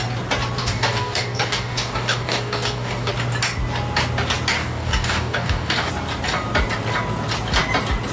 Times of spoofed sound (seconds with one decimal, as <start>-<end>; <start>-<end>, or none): 0.6-3.1; 4.6-5.9